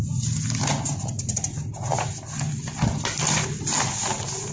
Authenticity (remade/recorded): recorded